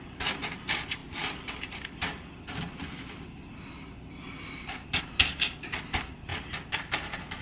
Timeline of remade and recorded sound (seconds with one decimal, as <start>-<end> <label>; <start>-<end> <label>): 0.0-1.0 recorded; 1.0-5.0 remade; 5.0-7.4 recorded